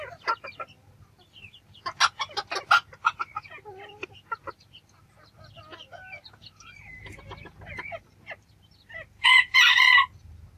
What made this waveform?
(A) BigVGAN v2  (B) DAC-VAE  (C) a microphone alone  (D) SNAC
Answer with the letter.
C